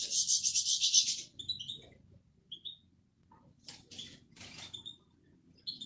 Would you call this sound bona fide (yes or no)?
yes